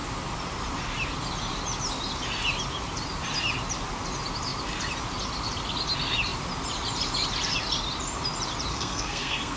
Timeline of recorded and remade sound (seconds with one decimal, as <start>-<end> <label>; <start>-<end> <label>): 0.0-8.7 recorded; 8.7-9.6 remade

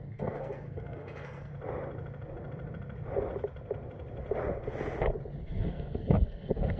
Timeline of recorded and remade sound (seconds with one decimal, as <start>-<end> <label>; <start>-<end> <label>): 0.0-1.5 remade; 1.5-5.4 recorded; 5.4-6.8 remade

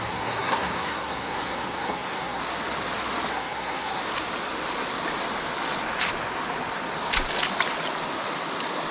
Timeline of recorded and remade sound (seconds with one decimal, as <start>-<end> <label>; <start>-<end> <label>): 0.0-2.4 remade; 2.4-3.3 recorded; 3.3-4.0 remade; 4.0-8.9 recorded

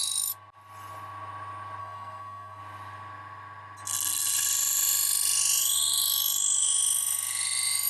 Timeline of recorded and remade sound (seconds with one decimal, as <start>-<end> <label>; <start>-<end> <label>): 0.0-1.8 recorded; 1.8-2.6 remade; 2.6-7.9 recorded

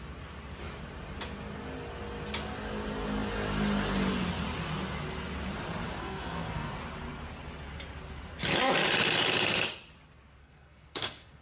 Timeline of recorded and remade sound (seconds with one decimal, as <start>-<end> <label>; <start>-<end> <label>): 0.0-6.0 recorded; 6.0-6.7 remade; 6.7-10.4 recorded; 10.4-11.4 remade

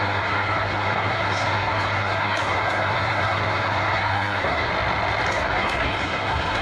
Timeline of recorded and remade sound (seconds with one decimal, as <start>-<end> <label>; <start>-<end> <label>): 0.0-4.7 remade; 4.7-5.3 recorded; 5.3-6.6 remade